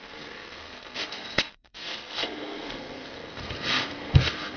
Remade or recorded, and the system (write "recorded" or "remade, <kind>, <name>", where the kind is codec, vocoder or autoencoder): remade, codec, SNAC